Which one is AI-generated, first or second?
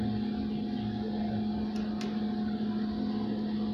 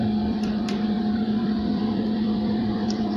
second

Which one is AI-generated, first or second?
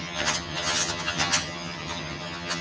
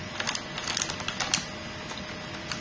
first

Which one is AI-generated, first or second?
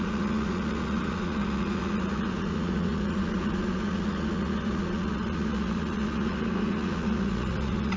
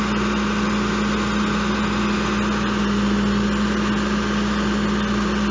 first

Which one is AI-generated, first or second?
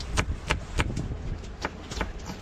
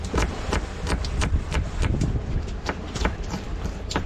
second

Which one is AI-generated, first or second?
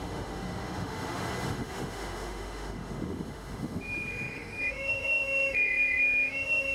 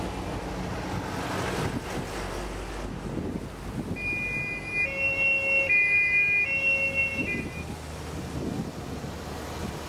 first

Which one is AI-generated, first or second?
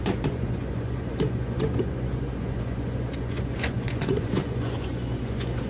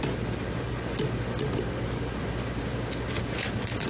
first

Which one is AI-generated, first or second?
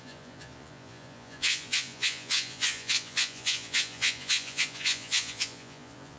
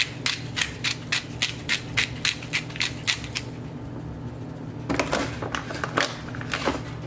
first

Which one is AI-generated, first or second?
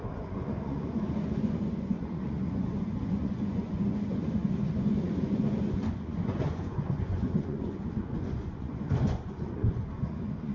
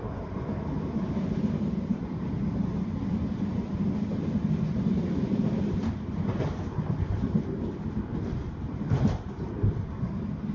first